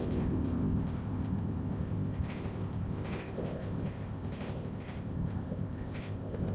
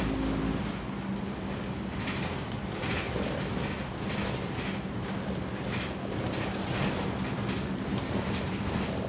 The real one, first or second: second